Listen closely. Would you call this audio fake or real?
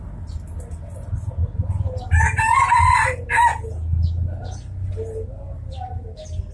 real